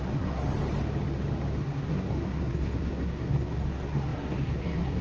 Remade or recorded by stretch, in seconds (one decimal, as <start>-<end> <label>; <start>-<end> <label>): 0.0-0.5 remade; 0.5-1.6 recorded; 1.6-5.0 remade